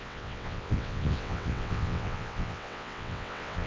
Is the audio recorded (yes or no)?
no